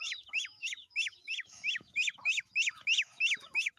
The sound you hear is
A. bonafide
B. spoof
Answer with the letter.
B